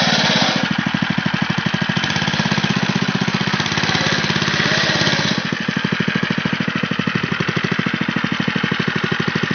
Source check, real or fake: real